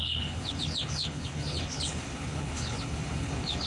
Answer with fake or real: fake